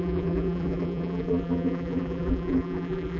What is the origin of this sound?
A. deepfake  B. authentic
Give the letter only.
A